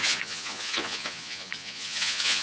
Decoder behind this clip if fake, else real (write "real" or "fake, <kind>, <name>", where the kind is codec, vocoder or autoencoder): fake, vocoder, Vocos